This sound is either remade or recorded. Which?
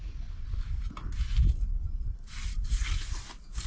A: recorded